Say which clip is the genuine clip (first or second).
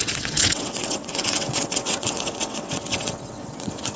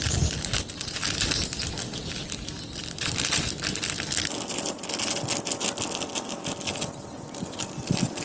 second